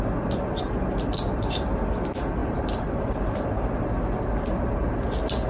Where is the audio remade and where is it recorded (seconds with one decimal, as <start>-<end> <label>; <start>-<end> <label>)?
0.0-2.4 recorded; 2.4-3.5 remade; 3.5-5.5 recorded